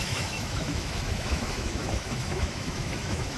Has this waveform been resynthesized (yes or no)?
yes